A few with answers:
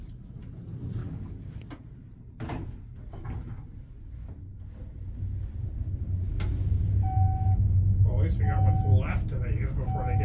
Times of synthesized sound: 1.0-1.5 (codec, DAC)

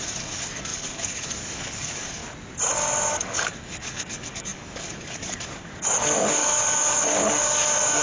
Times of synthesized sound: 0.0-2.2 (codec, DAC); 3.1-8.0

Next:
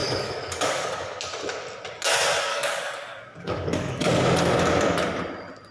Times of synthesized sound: 0.0-1.2 (codec, DAC); 2.5-4.2

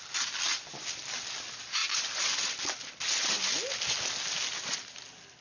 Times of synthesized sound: none

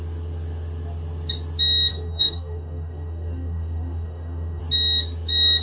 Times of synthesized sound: 1.9-4.6 (codec, DAC)

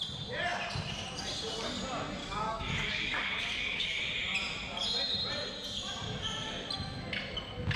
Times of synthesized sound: 2.2-4.0 (codec, DAC)